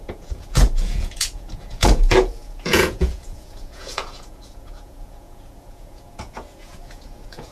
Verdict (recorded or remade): remade